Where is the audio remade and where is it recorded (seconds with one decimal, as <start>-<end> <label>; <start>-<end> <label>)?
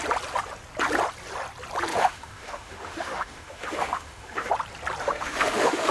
0.0-1.9 recorded; 1.9-4.5 remade; 4.5-5.0 recorded; 5.0-5.9 remade